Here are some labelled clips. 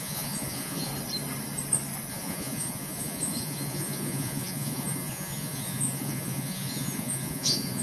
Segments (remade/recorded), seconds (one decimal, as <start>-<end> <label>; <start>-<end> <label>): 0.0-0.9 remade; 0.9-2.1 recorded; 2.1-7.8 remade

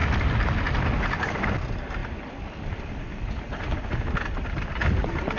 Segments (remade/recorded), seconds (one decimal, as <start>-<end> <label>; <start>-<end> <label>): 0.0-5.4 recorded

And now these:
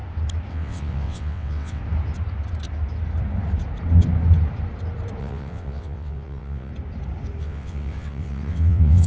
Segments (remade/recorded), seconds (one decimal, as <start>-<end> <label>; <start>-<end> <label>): 0.0-0.5 recorded; 0.5-1.8 remade; 1.8-5.2 recorded; 5.2-6.7 remade; 6.7-7.4 recorded; 7.4-9.1 remade

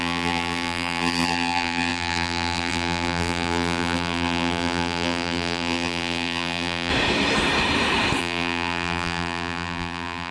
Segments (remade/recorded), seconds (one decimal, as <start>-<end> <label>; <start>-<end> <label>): 0.0-6.9 remade; 6.9-8.2 recorded; 8.2-10.3 remade

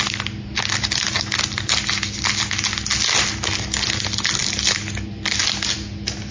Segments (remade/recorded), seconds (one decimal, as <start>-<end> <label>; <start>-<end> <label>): 0.0-6.3 recorded

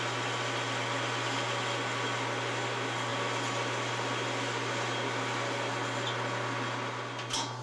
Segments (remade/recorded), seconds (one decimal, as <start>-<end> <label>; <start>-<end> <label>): 0.0-7.6 recorded